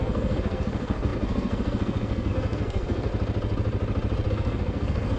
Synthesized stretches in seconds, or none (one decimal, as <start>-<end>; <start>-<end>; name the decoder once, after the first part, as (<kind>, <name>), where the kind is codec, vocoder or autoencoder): 0.0-3.1 (codec, SNAC); 4.3-5.2